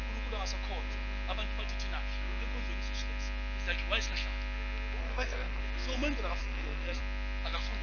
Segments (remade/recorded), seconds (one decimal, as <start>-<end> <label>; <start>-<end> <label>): 0.0-5.0 recorded; 5.0-5.6 remade; 5.6-6.4 recorded; 6.4-7.0 remade; 7.0-7.8 recorded